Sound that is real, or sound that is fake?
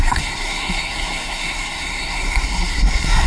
fake